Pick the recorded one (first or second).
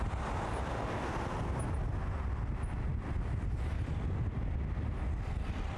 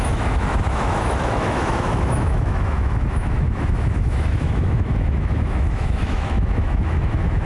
first